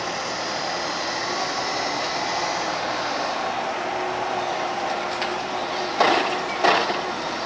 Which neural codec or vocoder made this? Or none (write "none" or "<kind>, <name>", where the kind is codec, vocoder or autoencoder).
none